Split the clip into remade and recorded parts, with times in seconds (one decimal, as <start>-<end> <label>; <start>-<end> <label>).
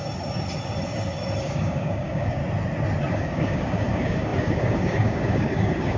0.0-1.4 recorded; 1.4-2.4 remade; 2.4-3.1 recorded; 3.1-6.0 remade